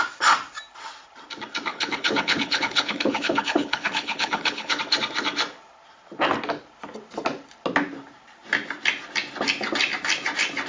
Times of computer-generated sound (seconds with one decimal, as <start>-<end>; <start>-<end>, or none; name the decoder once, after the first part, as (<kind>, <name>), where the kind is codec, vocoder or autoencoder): 1.7-4.8 (codec, HILCodec)